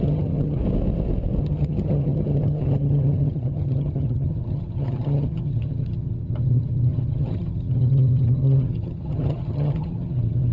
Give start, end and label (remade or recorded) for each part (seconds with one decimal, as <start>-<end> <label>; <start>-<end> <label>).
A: 0.0-0.6 remade; 0.6-1.4 recorded; 1.4-10.5 remade